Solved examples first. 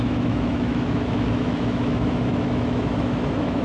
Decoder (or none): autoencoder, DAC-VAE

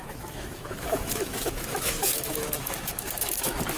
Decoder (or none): autoencoder, DAC-VAE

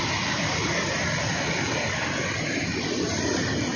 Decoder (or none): none